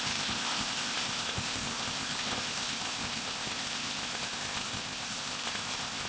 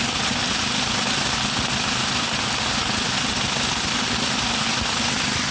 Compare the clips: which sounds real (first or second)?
second